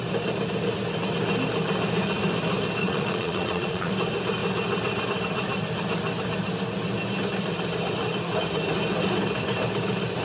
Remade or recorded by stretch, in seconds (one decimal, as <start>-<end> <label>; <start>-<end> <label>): 0.0-2.8 recorded; 2.8-3.9 remade; 3.9-10.2 recorded